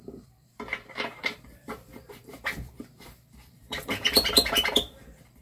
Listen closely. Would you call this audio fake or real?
fake